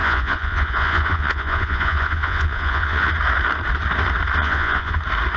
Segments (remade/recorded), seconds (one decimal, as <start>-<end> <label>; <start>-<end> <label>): 0.0-3.1 remade; 3.1-4.4 recorded; 4.4-5.0 remade; 5.0-5.4 recorded